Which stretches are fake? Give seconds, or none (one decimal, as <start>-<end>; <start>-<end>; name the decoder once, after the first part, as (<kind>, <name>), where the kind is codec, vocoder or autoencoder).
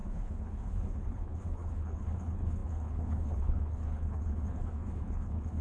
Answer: 0.0-5.6 (codec, HILCodec)